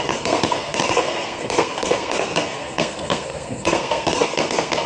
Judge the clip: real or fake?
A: fake